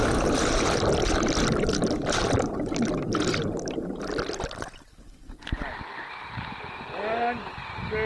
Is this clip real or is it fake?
real